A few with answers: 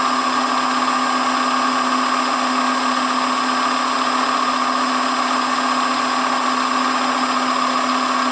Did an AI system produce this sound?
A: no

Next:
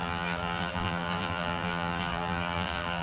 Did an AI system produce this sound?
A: yes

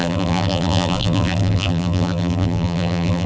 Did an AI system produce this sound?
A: yes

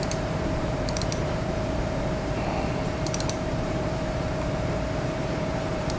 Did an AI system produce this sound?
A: yes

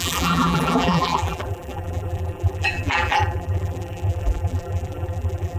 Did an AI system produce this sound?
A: yes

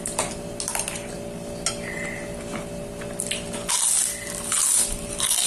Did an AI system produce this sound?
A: no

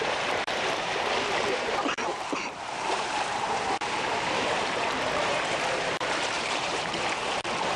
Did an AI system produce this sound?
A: yes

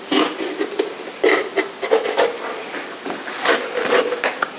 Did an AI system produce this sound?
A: no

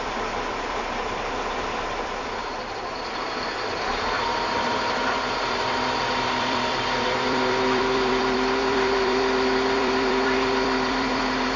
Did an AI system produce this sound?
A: yes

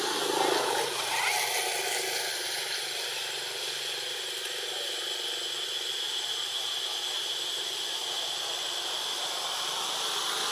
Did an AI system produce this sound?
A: no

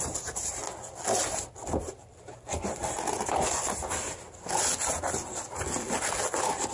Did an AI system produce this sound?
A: no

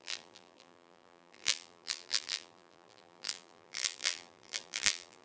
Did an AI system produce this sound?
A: yes